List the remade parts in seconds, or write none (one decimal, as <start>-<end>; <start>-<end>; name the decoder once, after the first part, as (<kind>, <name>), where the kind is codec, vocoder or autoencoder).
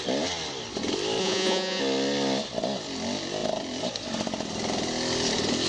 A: 1.2-1.8 (vocoder, Vocos)